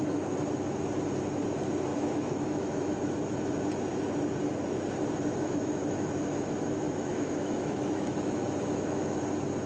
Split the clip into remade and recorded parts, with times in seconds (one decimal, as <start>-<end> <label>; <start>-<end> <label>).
0.0-1.9 recorded; 1.9-3.5 remade; 3.5-5.3 recorded; 5.3-9.2 remade; 9.2-9.7 recorded